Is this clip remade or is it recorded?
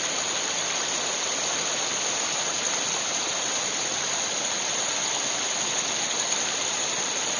recorded